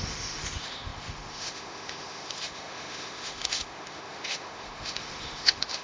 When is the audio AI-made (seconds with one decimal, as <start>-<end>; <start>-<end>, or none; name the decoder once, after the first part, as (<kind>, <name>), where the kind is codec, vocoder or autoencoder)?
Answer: 0.0-5.8 (autoencoder, DAC-VAE)